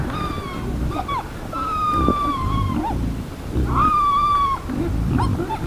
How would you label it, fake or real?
real